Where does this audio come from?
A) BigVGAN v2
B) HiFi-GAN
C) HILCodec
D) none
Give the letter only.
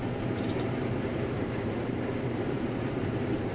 A